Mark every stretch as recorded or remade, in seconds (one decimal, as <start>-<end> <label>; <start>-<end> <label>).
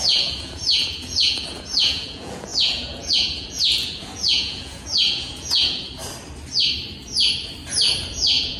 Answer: 0.0-6.0 remade; 6.0-8.1 recorded; 8.1-8.6 remade